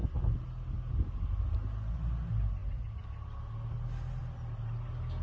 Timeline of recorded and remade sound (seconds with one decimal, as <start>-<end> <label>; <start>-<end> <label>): 0.0-5.2 recorded